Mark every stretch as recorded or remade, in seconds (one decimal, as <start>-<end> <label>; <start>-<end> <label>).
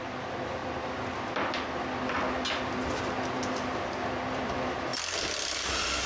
0.0-0.6 remade; 0.6-4.3 recorded; 4.3-4.9 remade; 4.9-6.1 recorded